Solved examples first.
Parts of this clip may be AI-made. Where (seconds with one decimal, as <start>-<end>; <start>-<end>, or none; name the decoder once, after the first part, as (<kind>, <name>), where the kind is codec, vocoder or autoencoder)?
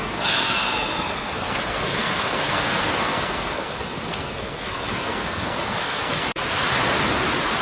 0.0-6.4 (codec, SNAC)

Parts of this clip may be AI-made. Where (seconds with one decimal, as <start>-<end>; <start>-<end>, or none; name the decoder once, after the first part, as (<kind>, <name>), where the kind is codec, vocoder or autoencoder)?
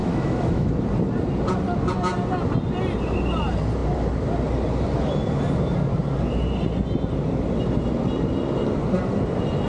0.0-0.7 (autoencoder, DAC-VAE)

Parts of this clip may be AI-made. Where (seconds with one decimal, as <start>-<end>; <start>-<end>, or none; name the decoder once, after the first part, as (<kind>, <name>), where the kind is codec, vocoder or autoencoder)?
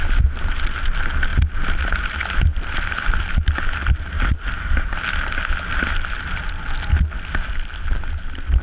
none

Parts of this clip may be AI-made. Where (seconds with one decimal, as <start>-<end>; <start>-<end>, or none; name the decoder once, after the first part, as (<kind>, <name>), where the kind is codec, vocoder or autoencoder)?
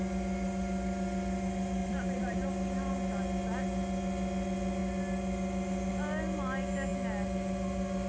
1.8-2.4 (vocoder, BigVGAN v2)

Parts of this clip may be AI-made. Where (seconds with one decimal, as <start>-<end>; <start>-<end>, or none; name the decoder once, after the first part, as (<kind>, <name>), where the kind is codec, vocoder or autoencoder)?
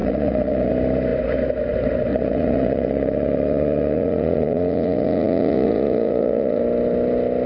0.0-0.7 (vocoder, Vocos); 2.1-6.6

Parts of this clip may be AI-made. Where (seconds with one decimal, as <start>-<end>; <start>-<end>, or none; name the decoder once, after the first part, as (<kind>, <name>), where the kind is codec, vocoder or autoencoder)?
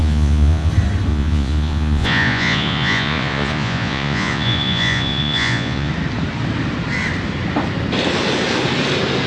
0.0-0.7 (vocoder, Vocos); 1.1-5.9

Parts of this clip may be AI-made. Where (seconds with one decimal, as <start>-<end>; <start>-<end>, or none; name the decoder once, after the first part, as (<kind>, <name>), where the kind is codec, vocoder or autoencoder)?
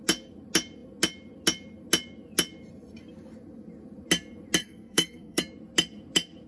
4.6-5.4 (codec, SNAC)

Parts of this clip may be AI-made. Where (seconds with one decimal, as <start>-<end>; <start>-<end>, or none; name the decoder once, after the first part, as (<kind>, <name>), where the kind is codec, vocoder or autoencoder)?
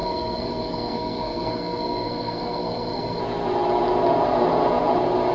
0.0-3.2 (codec, SNAC)